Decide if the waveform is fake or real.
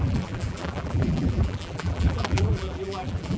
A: fake